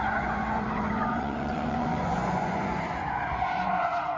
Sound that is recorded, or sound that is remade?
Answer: remade